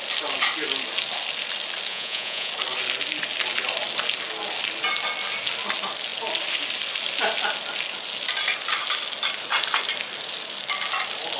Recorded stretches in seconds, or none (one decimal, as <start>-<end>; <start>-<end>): 0.0-1.9; 2.5-11.4